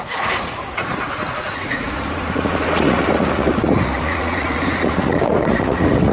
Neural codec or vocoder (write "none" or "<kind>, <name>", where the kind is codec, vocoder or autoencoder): vocoder, Vocos